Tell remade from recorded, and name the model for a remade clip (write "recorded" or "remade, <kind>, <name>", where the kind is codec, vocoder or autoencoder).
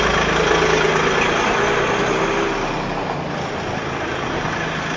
recorded